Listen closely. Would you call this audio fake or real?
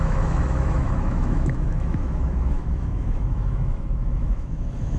fake